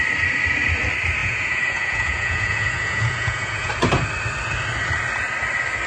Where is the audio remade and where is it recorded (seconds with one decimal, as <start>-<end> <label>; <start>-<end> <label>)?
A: 0.0-1.2 recorded; 1.2-3.7 remade; 3.7-5.9 recorded